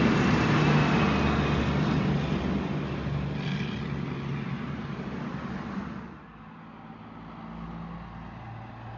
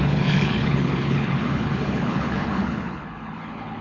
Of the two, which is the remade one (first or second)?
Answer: second